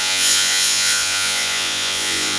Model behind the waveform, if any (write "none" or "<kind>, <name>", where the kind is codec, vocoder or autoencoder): vocoder, Vocos